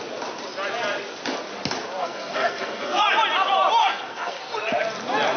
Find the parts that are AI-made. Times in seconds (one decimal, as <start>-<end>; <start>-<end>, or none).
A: 2.0-3.0; 3.8-4.4

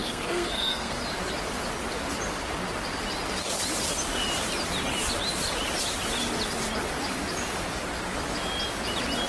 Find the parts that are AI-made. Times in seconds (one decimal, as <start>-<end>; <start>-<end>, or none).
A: 0.0-1.0